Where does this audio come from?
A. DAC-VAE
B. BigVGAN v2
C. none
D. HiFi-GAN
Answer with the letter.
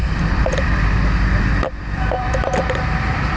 B